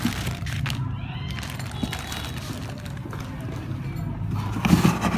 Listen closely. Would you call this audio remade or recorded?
recorded